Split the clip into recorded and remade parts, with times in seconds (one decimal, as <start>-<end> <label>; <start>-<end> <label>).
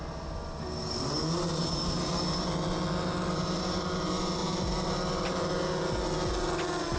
0.0-7.0 recorded